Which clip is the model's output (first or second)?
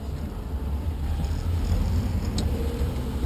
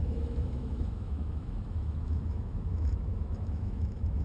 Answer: second